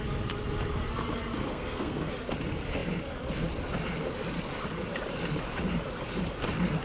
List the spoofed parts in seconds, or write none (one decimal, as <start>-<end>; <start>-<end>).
1.5-2.1